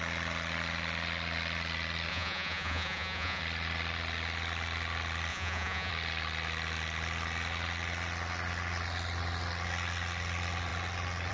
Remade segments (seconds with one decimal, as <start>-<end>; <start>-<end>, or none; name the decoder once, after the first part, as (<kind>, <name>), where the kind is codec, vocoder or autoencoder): 2.1-3.4 (vocoder, Vocos); 5.3-5.9